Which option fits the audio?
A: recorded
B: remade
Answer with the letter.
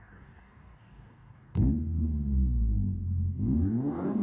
B